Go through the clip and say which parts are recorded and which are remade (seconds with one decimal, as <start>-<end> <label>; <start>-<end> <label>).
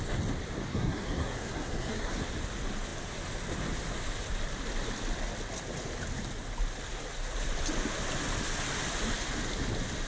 0.0-0.7 recorded; 0.7-2.2 remade; 2.2-10.1 recorded